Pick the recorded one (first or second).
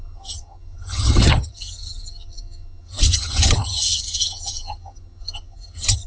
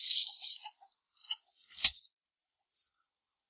second